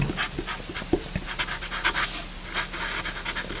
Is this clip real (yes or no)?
yes